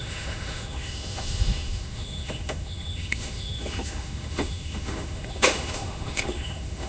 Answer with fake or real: fake